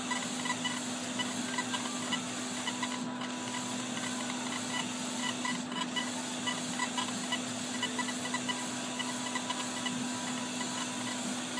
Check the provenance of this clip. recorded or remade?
recorded